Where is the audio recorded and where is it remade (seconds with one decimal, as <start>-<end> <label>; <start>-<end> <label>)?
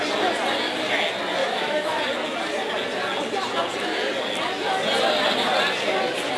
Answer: 0.0-1.4 recorded; 1.4-2.0 remade; 2.0-6.4 recorded